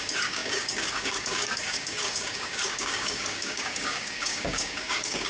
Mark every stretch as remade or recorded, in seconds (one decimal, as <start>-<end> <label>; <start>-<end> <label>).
0.0-5.3 remade